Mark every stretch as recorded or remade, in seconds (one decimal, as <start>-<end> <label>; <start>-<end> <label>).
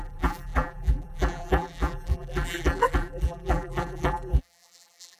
0.0-5.2 remade